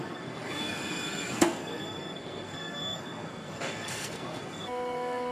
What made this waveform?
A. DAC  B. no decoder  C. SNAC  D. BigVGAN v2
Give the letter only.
C